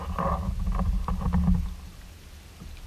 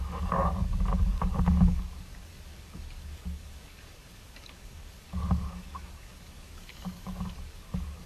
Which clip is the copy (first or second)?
second